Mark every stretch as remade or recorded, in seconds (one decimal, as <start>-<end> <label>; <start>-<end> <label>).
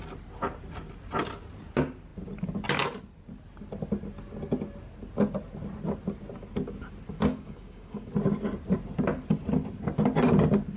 0.0-7.3 recorded; 7.3-8.1 remade; 8.1-10.8 recorded